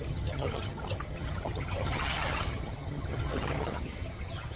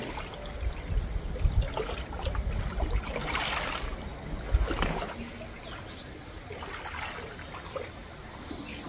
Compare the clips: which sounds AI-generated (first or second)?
first